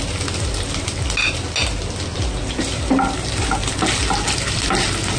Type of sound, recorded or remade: recorded